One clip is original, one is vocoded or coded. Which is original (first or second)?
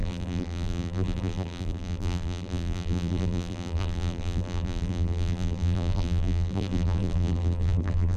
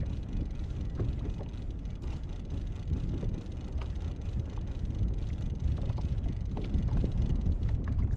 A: second